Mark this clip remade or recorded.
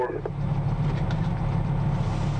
recorded